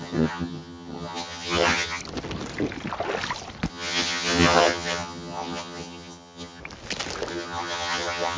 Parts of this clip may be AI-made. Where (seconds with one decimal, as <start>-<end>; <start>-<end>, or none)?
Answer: 0.0-2.0; 3.7-6.6; 7.3-8.4